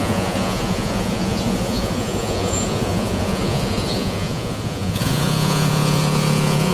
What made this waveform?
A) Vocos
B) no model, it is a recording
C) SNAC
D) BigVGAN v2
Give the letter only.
A